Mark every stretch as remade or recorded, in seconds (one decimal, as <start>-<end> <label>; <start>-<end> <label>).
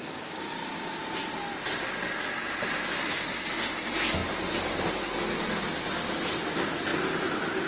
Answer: 0.0-7.7 recorded